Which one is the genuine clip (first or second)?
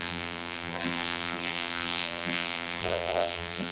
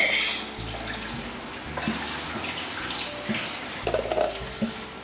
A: second